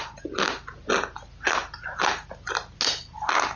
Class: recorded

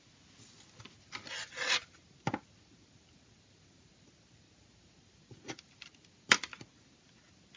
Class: recorded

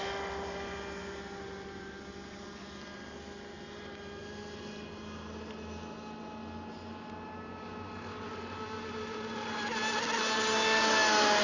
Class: recorded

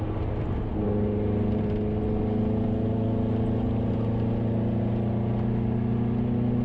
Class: recorded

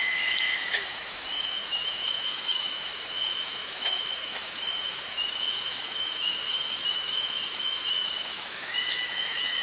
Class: remade